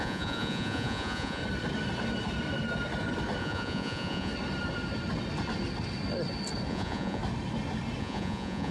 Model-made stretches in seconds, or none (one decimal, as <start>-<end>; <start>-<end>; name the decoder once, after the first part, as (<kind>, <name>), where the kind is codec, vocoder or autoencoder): 0.0-1.4 (vocoder, Vocos); 3.4-4.3; 6.7-7.2; 8.0-8.7